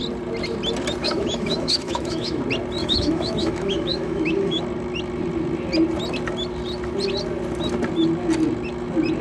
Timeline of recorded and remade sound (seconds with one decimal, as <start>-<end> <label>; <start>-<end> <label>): 0.0-1.0 recorded; 1.0-2.4 remade; 2.4-2.8 recorded; 2.8-4.6 remade; 4.6-9.2 recorded